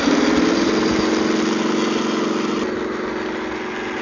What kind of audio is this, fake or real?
real